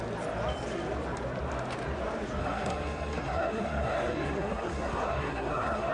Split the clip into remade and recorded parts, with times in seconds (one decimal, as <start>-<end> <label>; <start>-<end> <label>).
0.0-2.4 recorded; 2.4-5.9 remade